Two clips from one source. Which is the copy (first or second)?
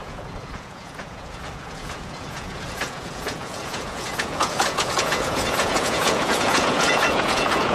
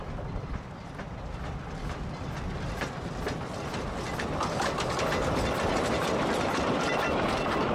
first